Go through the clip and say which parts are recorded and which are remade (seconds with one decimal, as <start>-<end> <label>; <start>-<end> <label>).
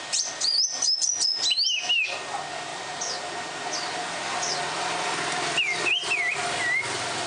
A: 0.0-2.7 recorded; 2.7-3.3 remade; 3.3-7.3 recorded